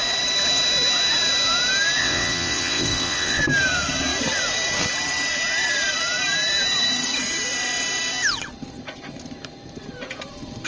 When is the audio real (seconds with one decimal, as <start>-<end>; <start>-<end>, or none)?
0.0-2.0; 3.4-10.7